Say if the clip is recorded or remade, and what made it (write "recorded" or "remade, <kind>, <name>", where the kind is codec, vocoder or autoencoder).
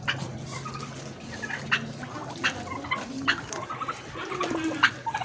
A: recorded